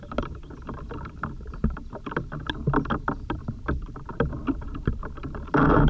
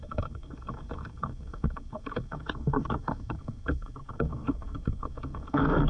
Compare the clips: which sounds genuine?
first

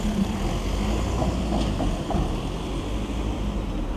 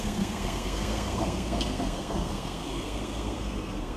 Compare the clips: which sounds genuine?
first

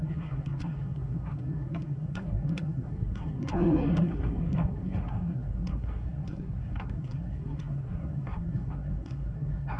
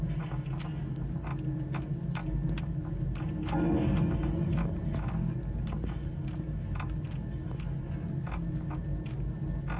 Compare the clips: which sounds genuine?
second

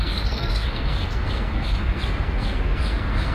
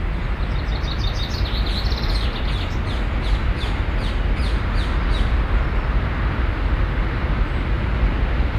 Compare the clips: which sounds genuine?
second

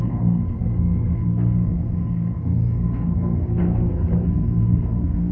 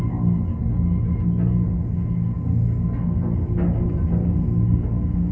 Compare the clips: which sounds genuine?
second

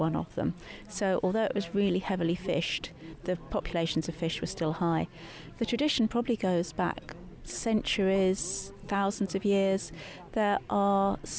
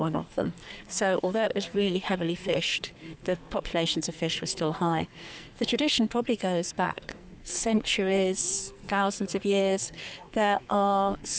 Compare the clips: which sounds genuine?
first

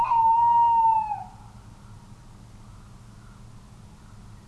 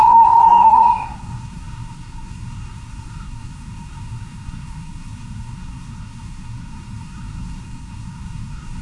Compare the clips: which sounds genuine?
first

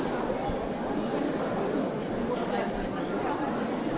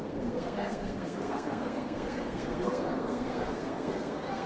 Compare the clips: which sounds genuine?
first